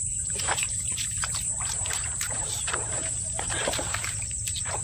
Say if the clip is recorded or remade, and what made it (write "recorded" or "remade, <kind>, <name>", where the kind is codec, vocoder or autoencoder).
remade, vocoder, BigVGAN v2